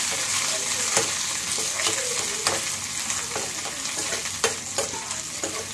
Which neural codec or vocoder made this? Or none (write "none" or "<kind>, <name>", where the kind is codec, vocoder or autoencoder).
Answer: none